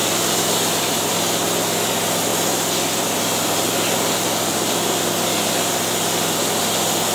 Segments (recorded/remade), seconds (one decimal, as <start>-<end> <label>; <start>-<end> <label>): 0.0-1.1 remade; 1.1-2.3 recorded; 2.3-6.6 remade; 6.6-7.1 recorded